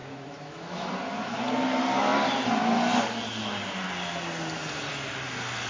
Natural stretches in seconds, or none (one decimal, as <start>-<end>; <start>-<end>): 0.9-5.7